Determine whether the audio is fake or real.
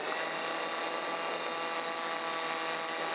real